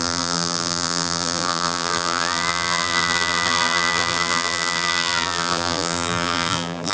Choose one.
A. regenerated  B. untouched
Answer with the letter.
A